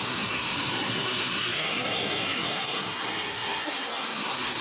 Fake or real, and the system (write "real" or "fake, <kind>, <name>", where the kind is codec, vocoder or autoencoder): fake, codec, SNAC